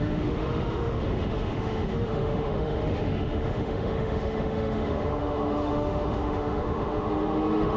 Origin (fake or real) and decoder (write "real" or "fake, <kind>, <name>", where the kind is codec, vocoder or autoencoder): fake, autoencoder, DAC-VAE